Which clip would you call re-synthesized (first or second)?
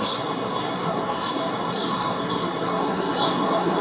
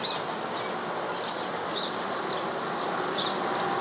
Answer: first